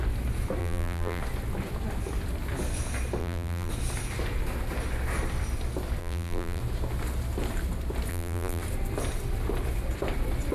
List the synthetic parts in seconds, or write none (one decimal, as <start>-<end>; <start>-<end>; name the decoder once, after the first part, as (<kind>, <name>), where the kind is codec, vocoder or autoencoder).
0.6-1.2 (vocoder, BigVGAN v2); 3.2-3.7; 6.0-6.6; 8.1-8.6